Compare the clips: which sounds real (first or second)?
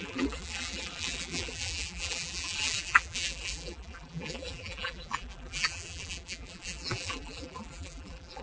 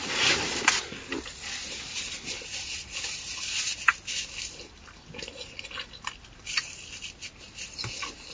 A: second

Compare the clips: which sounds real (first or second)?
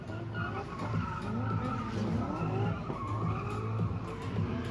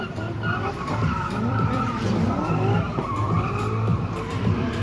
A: first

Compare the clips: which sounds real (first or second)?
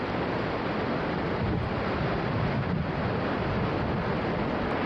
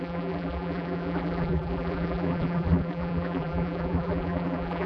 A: first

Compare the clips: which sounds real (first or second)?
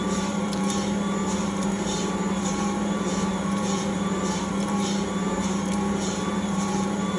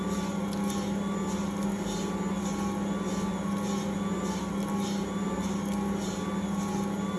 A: second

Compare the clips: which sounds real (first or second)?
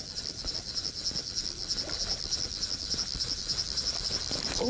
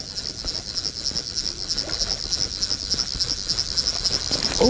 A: second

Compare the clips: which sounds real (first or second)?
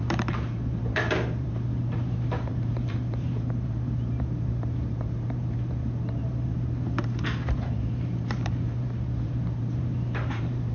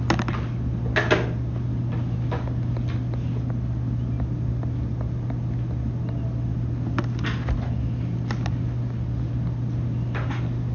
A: second